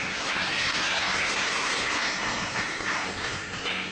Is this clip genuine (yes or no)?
no